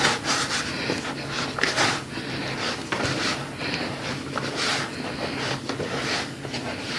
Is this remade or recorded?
recorded